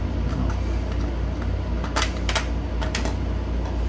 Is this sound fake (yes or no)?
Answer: no